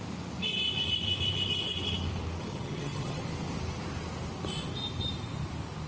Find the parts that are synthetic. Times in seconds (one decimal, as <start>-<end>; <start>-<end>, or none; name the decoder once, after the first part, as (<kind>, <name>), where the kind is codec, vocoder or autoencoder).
2.4-3.2 (vocoder, HiFi-GAN)